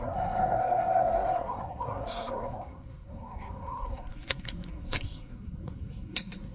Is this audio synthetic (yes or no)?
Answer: yes